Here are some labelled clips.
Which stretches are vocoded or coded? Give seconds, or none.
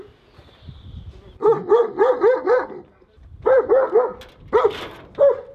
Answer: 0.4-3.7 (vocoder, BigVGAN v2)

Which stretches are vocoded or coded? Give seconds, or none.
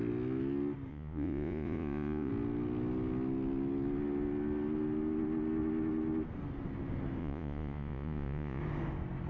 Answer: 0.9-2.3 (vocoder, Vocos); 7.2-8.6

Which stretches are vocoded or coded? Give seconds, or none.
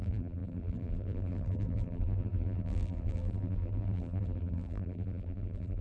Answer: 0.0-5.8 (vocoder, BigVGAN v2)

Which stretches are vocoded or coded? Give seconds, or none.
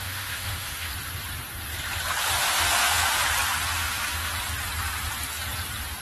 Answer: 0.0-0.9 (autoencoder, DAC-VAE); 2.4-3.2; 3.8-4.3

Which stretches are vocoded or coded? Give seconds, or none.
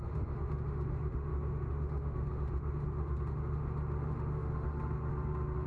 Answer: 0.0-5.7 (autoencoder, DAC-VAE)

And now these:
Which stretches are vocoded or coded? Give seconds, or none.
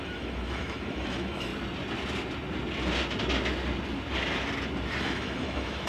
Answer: 0.0-1.5 (autoencoder, DAC-VAE); 5.0-5.9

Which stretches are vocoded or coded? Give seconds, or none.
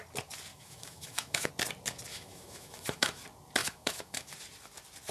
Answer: 0.5-1.5 (autoencoder, DAC-VAE); 2.1-3.2; 3.6-4.3